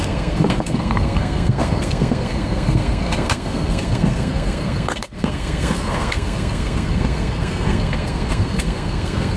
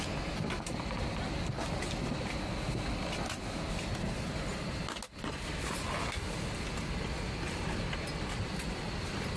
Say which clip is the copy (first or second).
first